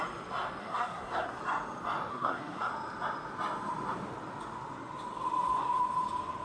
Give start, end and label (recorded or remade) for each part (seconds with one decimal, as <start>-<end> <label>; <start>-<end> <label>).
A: 0.0-0.6 recorded; 0.6-1.4 remade; 1.4-2.1 recorded; 2.1-2.7 remade; 2.7-6.4 recorded